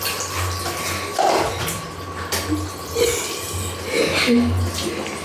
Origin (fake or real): real